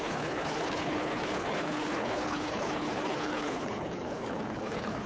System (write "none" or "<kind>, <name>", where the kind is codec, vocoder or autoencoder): codec, HILCodec